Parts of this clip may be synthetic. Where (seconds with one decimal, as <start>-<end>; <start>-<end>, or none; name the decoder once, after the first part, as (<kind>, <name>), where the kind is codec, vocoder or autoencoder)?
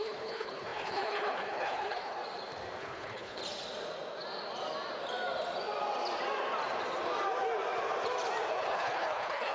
0.0-2.2 (codec, HILCodec); 2.8-3.4; 8.5-9.5